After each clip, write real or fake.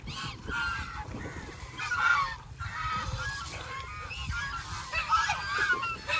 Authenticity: fake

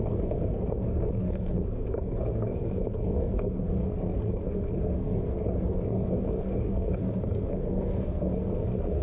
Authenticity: fake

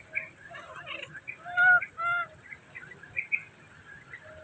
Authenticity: real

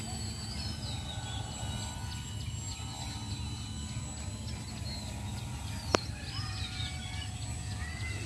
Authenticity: real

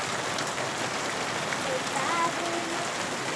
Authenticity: real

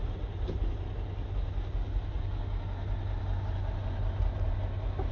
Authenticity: real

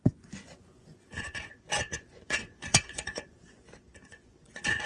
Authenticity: fake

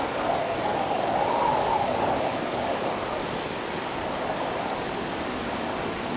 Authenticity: fake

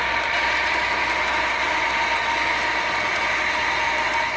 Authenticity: real